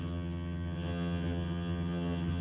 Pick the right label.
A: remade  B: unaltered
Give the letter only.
A